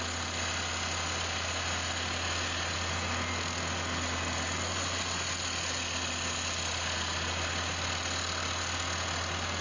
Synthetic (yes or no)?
no